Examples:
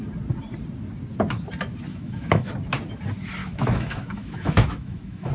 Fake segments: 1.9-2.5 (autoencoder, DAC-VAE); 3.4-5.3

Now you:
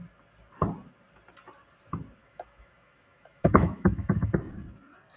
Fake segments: 2.2-4.3 (autoencoder, DAC-VAE)

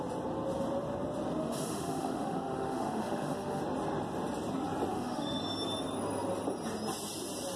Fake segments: 1.4-3.6 (autoencoder, DAC-VAE); 4.9-5.4